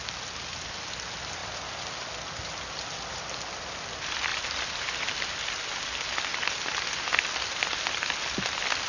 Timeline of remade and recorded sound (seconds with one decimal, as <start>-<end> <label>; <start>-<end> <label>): 0.0-1.4 recorded; 1.4-3.2 remade; 3.2-4.3 recorded; 4.3-5.1 remade; 5.1-8.9 recorded